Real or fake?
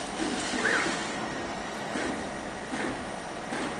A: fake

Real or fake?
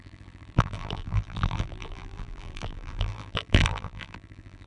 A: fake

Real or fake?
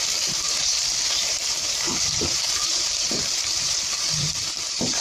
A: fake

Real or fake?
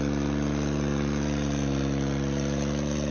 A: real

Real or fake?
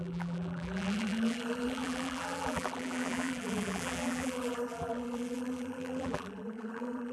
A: fake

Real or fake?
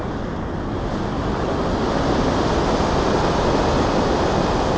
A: real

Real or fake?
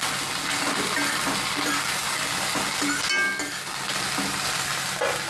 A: real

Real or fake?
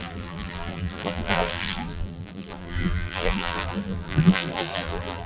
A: fake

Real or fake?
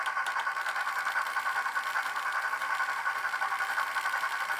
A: real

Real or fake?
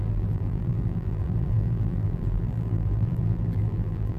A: fake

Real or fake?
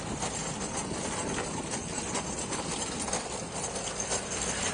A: real